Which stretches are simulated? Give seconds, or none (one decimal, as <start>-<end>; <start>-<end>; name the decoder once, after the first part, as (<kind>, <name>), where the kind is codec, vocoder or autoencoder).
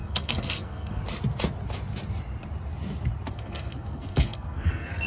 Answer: 0.0-1.0 (codec, SNAC); 3.3-5.1